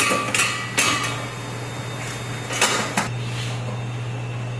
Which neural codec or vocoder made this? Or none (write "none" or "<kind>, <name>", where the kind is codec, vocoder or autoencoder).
none